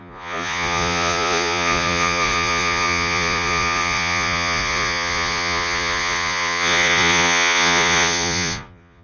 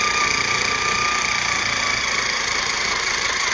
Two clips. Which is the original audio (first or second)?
second